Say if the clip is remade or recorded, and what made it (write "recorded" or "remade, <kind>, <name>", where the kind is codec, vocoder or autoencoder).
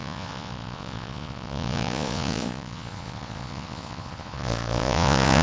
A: remade, vocoder, Vocos